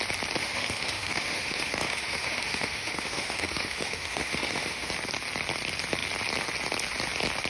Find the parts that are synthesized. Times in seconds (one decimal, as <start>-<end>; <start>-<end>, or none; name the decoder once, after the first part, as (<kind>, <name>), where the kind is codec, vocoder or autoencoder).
0.4-4.9 (autoencoder, DAC-VAE)